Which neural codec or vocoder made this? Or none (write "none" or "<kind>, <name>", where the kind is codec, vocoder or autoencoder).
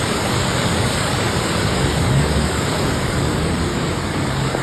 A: codec, DAC